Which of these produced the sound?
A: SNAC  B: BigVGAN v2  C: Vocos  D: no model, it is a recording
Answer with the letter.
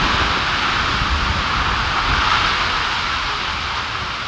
D